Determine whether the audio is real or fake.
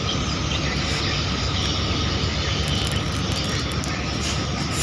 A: real